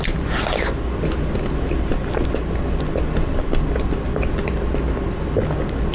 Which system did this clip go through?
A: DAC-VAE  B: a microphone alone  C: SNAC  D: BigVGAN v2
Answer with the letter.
B